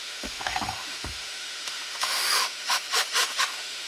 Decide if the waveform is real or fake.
fake